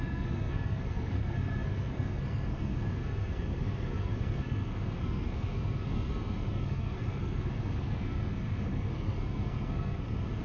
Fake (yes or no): yes